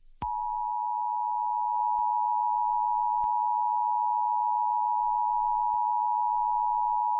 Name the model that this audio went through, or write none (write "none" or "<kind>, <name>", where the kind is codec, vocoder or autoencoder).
none